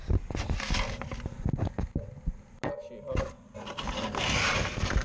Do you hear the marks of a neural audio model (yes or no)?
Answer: no